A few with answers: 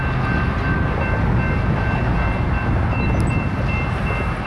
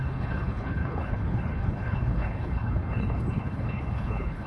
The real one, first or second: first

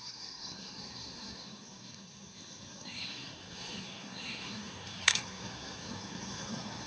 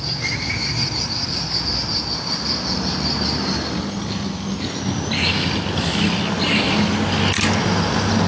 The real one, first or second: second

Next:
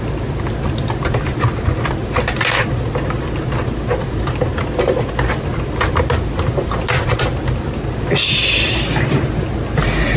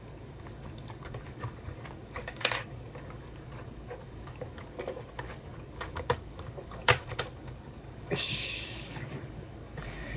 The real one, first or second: first